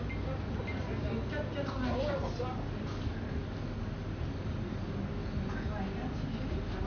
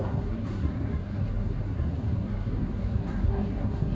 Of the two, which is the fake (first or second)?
second